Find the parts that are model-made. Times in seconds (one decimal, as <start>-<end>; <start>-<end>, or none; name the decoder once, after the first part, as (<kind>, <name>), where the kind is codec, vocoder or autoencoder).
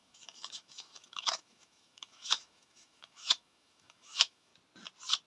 0.0-4.5 (autoencoder, DAC-VAE)